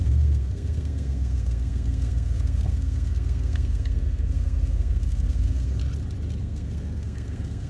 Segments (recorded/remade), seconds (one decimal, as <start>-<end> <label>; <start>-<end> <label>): 0.0-5.8 remade; 5.8-6.4 recorded; 6.4-7.7 remade